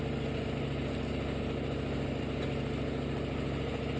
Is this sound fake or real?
real